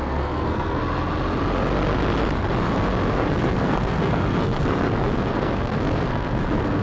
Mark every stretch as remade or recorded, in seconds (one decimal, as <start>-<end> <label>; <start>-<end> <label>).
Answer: 0.0-0.8 remade; 0.8-3.1 recorded; 3.1-6.8 remade